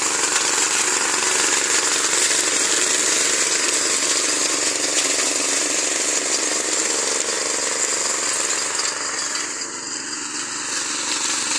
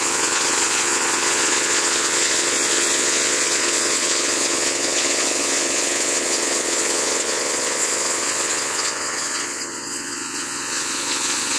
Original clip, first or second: first